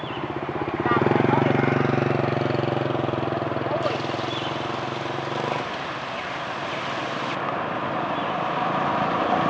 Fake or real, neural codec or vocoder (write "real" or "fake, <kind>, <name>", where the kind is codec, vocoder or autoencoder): real